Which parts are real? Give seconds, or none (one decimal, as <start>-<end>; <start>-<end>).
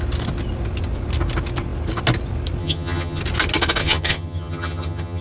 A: 0.0-2.6; 3.2-3.8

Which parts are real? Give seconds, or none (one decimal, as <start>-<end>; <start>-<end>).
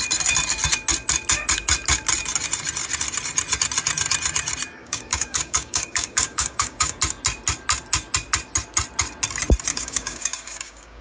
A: 0.0-4.8; 7.0-9.7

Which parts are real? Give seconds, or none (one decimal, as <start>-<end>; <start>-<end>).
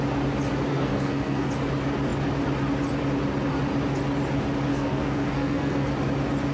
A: 0.0-0.7; 1.5-4.7; 5.9-6.5